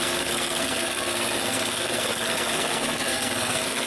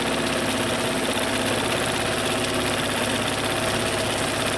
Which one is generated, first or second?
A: first